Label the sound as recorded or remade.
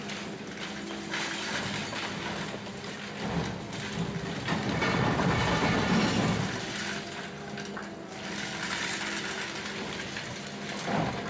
recorded